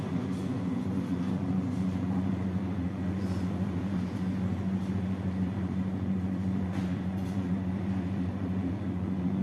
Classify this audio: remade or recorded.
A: remade